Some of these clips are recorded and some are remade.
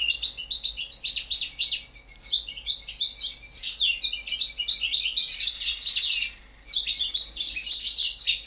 recorded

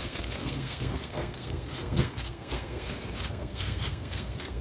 remade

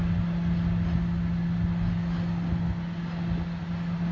recorded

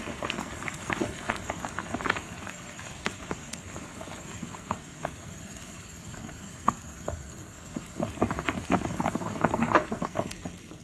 remade